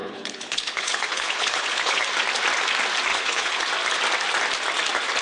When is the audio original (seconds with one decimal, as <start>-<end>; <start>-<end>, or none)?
2.0-3.1; 3.6-5.2